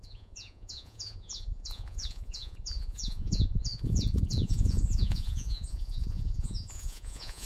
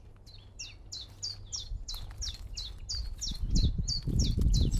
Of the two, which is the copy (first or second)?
first